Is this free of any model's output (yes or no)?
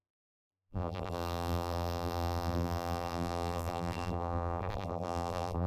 no